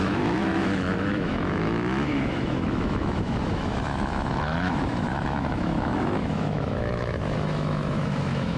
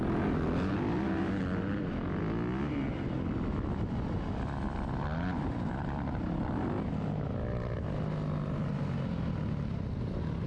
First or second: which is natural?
second